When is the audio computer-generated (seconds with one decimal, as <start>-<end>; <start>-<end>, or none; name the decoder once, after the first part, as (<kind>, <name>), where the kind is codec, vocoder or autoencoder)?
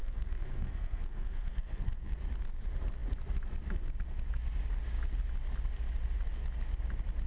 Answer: 0.0-2.2 (codec, SNAC)